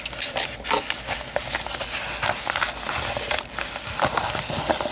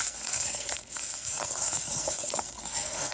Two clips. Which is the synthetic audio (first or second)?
second